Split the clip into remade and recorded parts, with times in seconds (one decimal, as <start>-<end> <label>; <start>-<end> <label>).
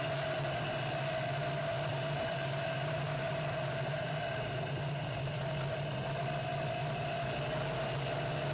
0.0-1.9 recorded; 1.9-5.4 remade; 5.4-8.5 recorded